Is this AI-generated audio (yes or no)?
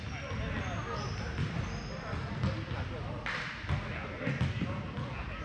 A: no